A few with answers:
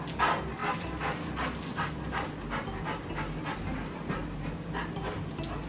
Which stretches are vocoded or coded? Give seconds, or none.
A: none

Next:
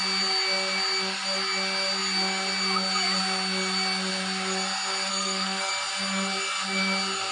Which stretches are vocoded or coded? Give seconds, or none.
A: 5.1-5.7

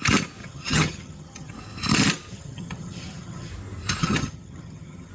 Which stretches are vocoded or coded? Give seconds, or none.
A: 0.4-1.5; 2.3-3.5; 4.0-5.1

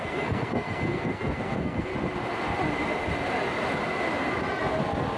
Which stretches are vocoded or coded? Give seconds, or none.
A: 0.0-1.9

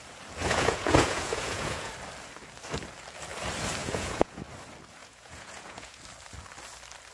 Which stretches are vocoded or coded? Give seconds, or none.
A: 0.4-1.9; 3.8-4.4; 5.0-6.0

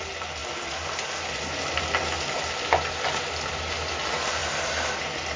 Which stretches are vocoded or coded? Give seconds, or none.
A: none

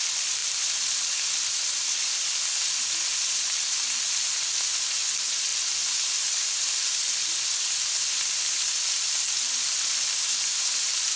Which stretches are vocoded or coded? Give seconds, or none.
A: none